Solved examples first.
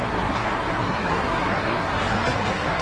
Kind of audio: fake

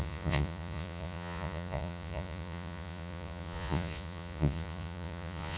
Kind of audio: fake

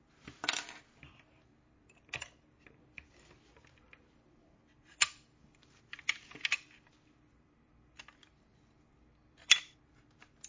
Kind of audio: fake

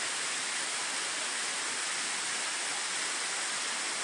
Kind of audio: real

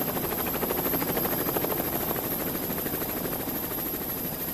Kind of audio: real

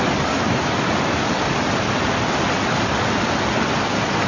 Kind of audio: real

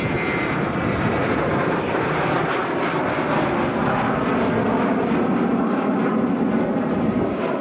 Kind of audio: real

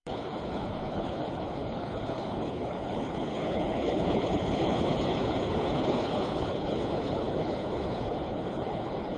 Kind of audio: fake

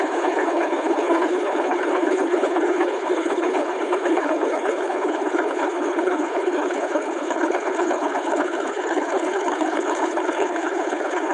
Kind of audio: fake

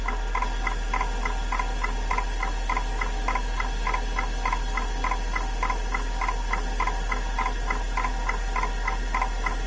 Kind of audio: real